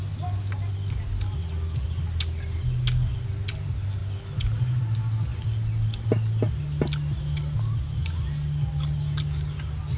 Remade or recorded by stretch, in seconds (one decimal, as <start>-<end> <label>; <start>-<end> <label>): 0.0-10.0 recorded